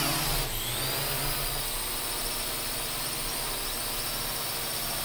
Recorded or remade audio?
recorded